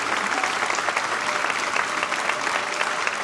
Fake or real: real